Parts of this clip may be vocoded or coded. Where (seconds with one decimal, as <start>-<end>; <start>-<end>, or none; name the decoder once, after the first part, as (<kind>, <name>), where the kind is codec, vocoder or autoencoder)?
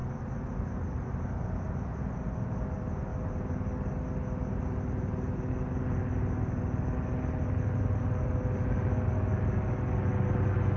none